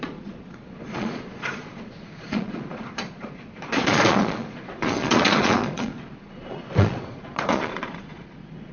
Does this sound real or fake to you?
fake